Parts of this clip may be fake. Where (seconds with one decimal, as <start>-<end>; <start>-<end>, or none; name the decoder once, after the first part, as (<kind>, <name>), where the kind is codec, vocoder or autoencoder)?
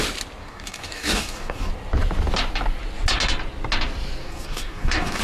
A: 0.4-1.7 (codec, DAC); 4.2-5.2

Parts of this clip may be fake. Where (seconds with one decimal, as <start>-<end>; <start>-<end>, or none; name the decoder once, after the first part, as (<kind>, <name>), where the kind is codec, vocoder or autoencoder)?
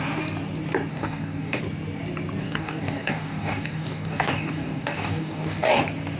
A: 0.9-1.6 (codec, DAC); 2.4-5.8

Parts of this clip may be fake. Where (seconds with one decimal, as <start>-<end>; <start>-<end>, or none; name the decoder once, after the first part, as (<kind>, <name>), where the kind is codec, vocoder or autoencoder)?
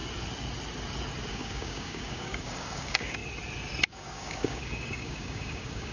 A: 1.3-3.2 (codec, DAC); 3.9-5.9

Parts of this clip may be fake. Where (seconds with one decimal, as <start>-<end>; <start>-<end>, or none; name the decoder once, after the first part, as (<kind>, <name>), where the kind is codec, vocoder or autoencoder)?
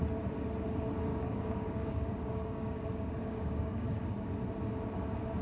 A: 1.1-4.3 (codec, DAC)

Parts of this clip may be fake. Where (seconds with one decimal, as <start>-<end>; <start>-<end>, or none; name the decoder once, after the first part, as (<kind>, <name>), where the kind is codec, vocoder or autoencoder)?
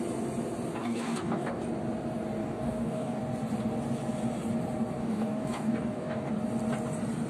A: 0.8-1.6 (codec, DAC); 2.4-3.2; 5.0-6.3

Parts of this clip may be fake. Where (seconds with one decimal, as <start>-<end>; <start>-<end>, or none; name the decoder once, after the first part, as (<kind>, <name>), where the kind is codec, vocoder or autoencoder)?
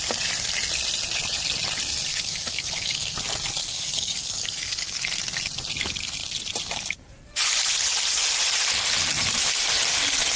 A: 2.1-3.1 (codec, DAC); 3.6-5.0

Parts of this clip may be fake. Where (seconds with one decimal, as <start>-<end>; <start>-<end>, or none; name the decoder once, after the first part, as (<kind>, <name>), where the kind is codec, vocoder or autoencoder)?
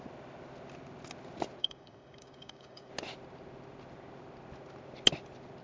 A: 1.6-2.9 (codec, DAC)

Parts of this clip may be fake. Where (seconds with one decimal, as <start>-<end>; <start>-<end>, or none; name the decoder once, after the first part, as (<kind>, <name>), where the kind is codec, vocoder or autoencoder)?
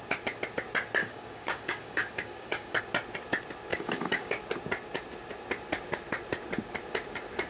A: 1.0-2.8 (codec, DAC); 3.7-4.3